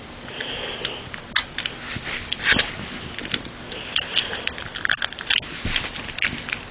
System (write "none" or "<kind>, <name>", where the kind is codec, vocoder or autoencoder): none